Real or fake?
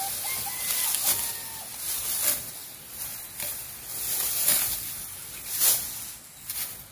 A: real